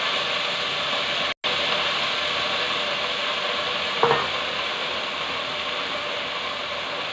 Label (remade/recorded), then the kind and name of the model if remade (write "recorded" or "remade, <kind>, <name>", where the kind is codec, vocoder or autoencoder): recorded